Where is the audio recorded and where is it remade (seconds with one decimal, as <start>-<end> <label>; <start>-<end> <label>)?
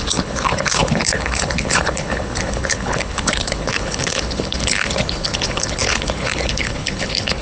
0.0-7.4 remade